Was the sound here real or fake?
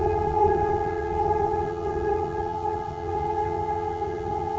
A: fake